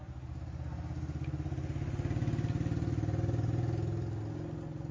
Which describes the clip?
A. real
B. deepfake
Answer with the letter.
A